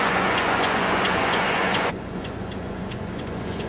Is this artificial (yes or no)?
yes